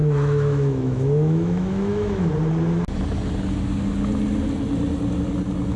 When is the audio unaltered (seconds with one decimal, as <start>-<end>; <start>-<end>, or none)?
2.3-5.8